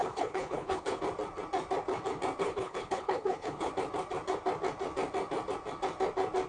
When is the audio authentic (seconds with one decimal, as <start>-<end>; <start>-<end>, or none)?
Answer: 1.0-2.4; 3.7-6.5